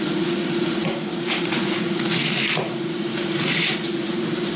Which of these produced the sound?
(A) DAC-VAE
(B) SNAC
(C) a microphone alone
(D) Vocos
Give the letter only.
D